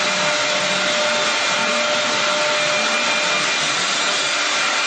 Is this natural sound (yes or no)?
yes